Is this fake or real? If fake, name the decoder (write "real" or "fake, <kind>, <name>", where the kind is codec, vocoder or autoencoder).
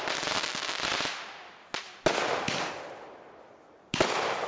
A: real